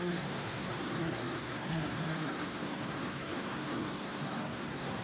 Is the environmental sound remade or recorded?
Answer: remade